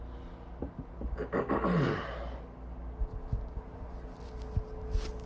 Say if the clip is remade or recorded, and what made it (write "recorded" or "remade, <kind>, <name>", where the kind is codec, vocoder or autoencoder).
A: recorded